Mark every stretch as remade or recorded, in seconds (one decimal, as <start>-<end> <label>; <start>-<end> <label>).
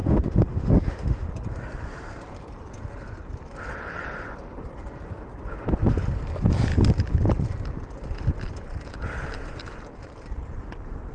0.0-1.3 remade; 1.3-11.1 recorded